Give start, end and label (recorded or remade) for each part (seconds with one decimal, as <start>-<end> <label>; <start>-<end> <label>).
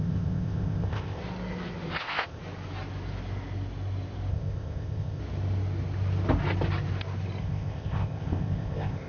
0.0-1.2 remade; 1.2-2.0 recorded; 2.0-2.4 remade; 2.4-4.3 recorded; 4.3-5.2 remade; 5.2-7.4 recorded; 7.4-9.1 remade